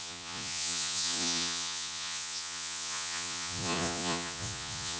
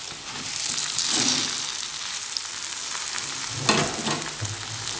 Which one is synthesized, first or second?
first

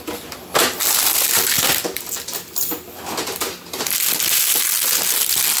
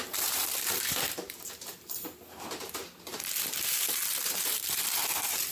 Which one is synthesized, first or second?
second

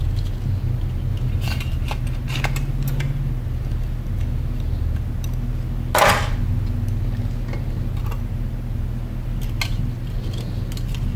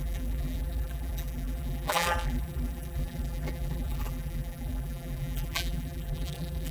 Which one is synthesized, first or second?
second